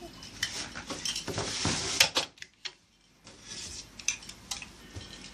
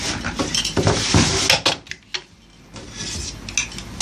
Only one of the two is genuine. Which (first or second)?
second